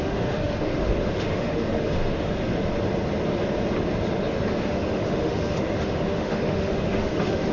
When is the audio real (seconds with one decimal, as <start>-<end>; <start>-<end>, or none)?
2.5-4.5